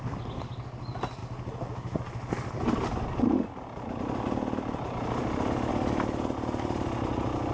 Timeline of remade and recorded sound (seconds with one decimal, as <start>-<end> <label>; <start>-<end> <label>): 0.0-7.5 recorded